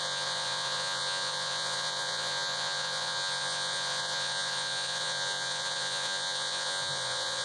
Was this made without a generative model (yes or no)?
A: no